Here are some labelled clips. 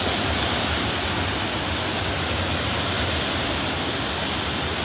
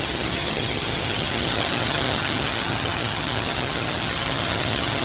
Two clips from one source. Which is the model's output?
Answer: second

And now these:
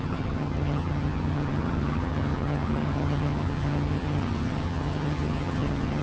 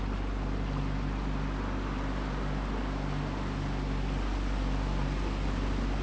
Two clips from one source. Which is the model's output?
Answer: first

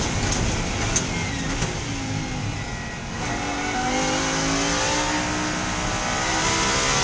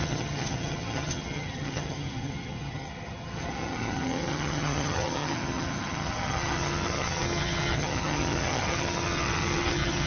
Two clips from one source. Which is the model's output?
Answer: second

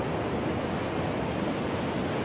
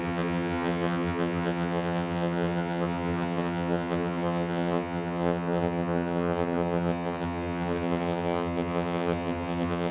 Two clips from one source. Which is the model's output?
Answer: second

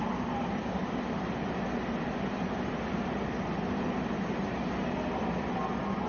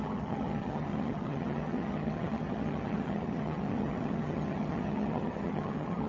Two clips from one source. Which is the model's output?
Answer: second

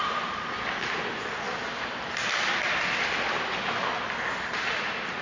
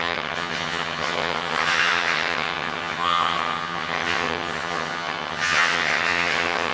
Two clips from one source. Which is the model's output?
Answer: second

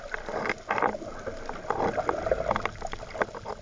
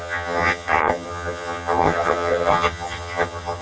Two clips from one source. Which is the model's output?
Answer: second